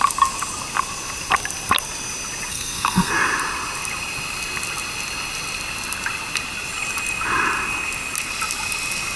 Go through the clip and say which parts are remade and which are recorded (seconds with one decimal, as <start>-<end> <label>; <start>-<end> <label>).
0.0-2.5 recorded; 2.5-3.1 remade; 3.1-9.2 recorded